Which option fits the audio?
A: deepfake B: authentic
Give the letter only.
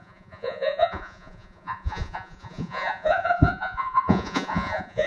A